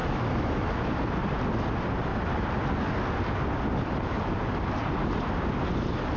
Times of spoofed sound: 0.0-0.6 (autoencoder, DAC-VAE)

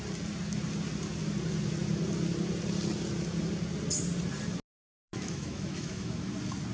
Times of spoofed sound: 5.0-6.3 (autoencoder, DAC-VAE)

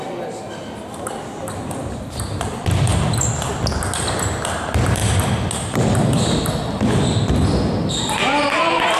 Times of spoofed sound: none

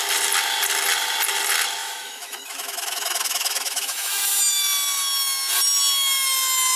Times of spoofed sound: 1.8-4.1 (autoencoder, DAC-VAE)